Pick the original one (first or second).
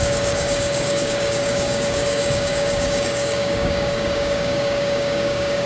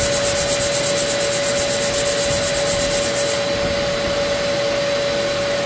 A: second